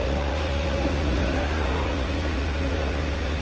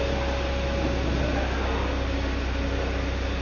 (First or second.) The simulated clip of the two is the first